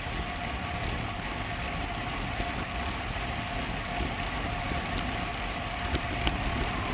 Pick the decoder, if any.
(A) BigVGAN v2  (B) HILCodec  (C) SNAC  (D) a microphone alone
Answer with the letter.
D